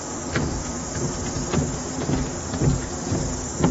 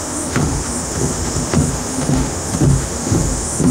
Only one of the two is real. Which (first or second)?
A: first